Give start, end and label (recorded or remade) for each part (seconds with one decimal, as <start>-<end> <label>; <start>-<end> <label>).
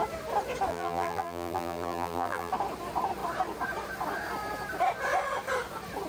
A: 0.0-0.7 recorded; 0.7-2.5 remade; 2.5-6.1 recorded